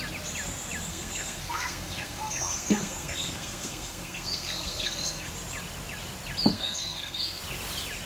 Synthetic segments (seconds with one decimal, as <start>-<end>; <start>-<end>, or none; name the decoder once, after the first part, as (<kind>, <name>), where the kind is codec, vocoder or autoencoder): 0.9-5.3 (codec, SNAC); 6.5-7.4